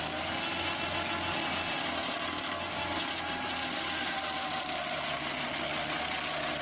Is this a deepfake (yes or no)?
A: no